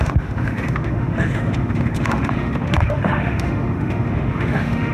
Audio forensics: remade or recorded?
remade